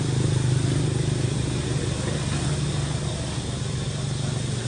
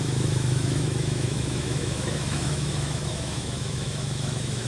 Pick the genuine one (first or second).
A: first